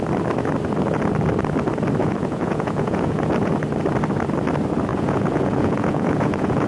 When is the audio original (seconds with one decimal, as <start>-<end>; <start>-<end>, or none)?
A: 0.0-2.0; 3.5-4.9